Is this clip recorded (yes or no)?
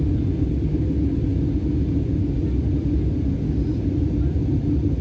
yes